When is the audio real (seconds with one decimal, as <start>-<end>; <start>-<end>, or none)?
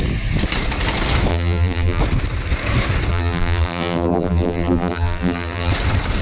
0.0-1.3; 2.0-3.1; 5.7-6.2